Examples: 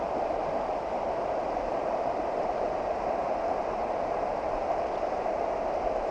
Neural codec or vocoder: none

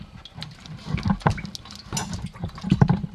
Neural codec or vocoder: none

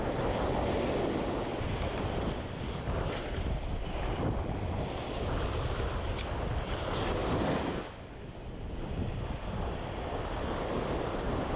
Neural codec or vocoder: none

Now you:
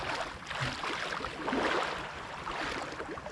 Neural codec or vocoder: none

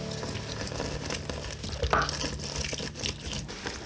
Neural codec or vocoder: none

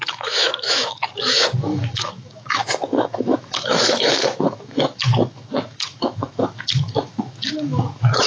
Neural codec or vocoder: autoencoder, DAC-VAE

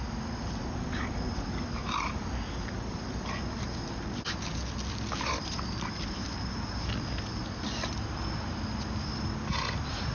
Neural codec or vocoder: none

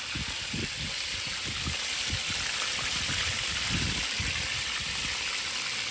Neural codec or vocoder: none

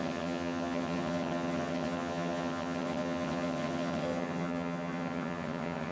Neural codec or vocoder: vocoder, HiFi-GAN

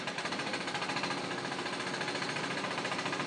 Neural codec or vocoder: none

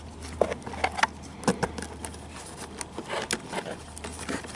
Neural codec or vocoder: none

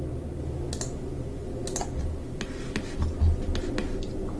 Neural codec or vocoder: none